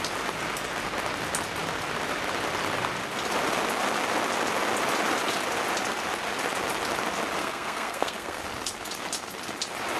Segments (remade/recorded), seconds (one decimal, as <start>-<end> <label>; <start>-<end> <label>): 0.0-7.4 recorded; 7.4-8.4 remade; 8.4-10.0 recorded